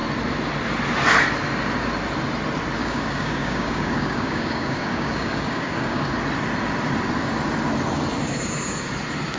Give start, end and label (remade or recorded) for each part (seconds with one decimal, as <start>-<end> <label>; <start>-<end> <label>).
0.0-2.8 recorded; 2.8-6.1 remade; 6.1-9.4 recorded